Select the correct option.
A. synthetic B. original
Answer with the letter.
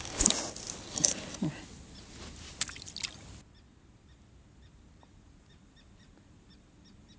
B